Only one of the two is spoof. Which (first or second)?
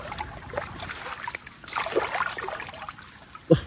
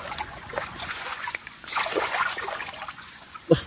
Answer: second